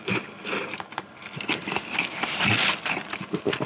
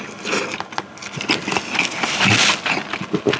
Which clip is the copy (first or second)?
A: first